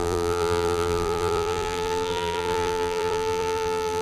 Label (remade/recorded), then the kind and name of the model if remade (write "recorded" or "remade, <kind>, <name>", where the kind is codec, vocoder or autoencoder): remade, vocoder, BigVGAN v2